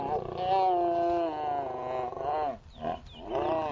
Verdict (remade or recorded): recorded